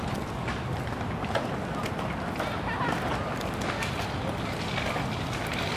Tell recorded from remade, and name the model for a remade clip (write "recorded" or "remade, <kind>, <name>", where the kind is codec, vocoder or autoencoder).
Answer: recorded